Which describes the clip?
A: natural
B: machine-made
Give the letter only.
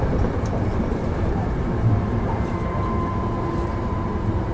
B